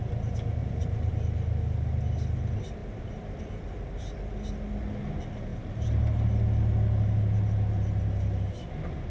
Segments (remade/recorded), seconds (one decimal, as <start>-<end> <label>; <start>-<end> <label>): 0.0-0.6 recorded; 0.6-1.1 remade; 1.1-2.8 recorded; 2.8-3.4 remade; 3.4-9.1 recorded